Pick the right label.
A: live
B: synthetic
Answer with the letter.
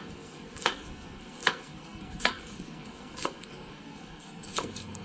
B